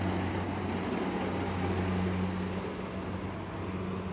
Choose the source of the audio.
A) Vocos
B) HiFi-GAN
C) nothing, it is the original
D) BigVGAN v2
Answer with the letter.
C